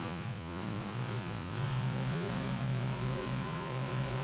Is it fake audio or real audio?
fake